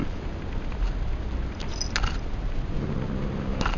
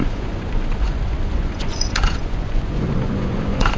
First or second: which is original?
first